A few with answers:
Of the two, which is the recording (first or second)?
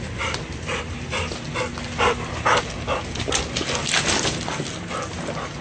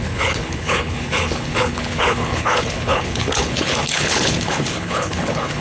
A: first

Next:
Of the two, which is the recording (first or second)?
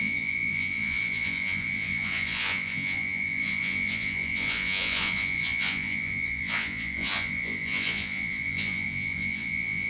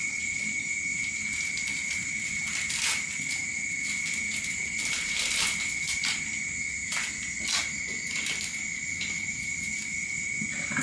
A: second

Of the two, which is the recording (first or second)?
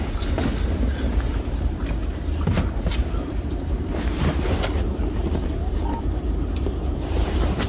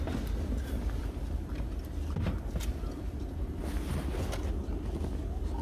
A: second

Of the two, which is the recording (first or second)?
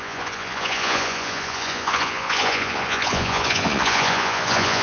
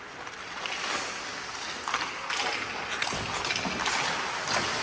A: second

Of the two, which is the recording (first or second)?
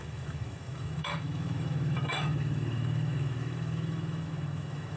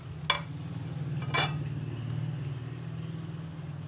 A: second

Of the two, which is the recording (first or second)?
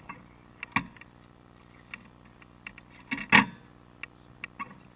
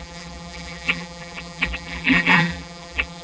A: first